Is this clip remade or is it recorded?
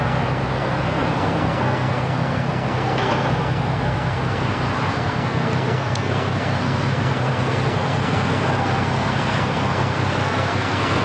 remade